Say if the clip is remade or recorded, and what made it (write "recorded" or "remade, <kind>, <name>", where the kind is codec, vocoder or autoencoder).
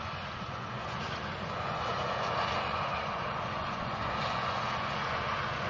remade, vocoder, Vocos